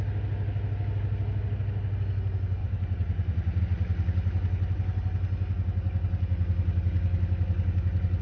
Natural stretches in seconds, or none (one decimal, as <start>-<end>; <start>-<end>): 0.0-2.6; 3.6-8.2